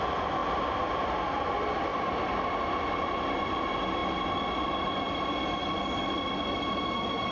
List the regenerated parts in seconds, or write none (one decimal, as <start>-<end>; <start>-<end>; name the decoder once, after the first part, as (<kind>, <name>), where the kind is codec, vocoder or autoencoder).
none